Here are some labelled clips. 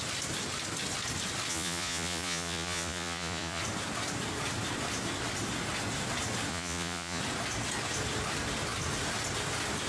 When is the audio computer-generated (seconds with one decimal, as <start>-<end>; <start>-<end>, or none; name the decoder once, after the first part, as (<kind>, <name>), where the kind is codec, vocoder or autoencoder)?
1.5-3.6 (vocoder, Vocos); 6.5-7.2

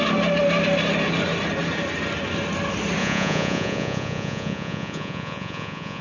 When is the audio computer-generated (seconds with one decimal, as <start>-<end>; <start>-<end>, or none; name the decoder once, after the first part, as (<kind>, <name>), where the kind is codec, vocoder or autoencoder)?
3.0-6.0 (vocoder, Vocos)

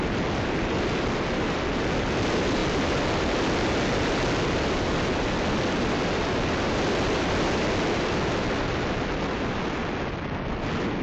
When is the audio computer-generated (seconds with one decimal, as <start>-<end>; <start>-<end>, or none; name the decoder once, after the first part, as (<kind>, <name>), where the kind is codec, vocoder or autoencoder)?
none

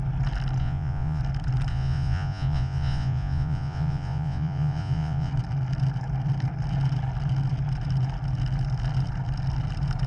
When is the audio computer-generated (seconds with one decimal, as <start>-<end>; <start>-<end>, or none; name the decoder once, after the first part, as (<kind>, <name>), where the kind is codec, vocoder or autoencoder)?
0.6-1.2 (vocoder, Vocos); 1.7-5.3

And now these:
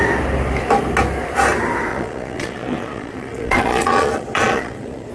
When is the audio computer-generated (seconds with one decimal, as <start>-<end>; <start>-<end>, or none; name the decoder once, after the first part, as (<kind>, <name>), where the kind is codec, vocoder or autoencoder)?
1.9-5.1 (vocoder, Vocos)